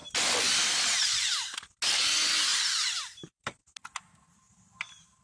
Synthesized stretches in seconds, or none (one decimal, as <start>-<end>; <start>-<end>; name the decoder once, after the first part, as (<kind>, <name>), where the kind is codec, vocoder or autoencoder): 2.5-3.6 (vocoder, BigVGAN v2)